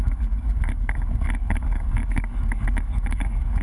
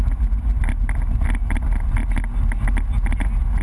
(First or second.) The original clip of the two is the second